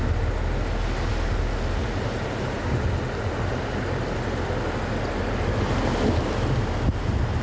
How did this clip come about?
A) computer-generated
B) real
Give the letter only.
B